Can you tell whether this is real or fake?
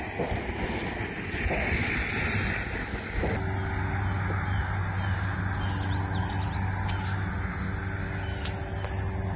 real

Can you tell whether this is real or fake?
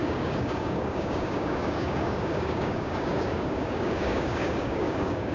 fake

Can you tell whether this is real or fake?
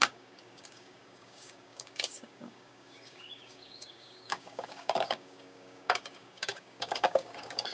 fake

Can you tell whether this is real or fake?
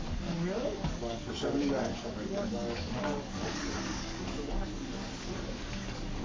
fake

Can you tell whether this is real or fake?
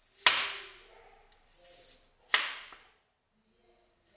real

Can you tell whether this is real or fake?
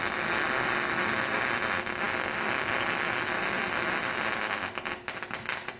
real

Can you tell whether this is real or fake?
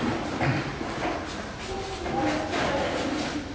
real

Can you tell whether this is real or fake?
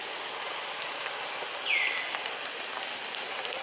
real